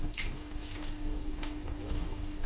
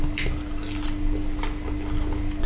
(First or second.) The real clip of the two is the second